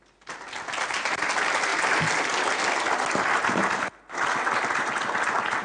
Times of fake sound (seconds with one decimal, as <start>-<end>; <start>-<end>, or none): none